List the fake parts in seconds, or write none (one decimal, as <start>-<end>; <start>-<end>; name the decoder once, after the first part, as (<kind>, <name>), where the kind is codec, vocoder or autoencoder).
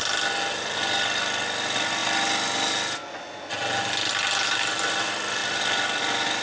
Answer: none